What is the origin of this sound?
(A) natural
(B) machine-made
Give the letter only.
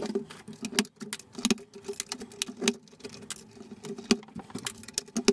A